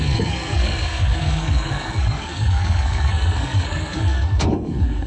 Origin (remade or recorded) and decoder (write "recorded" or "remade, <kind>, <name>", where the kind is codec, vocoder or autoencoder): remade, codec, SNAC